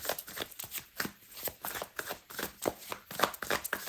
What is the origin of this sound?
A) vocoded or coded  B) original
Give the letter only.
B